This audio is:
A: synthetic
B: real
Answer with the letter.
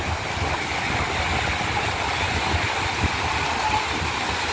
B